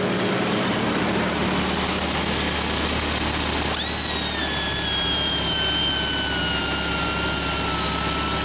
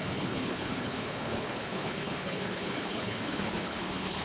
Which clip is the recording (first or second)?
first